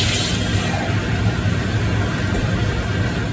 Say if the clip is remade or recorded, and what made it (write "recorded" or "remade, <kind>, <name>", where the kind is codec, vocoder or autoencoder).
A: recorded